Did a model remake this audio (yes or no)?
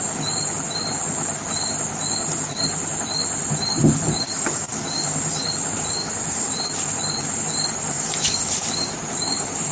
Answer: no